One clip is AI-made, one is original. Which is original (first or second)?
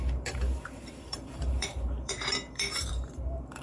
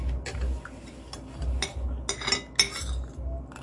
second